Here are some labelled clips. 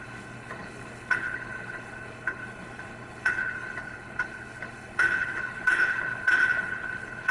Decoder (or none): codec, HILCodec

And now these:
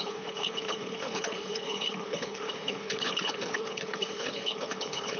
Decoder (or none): codec, HILCodec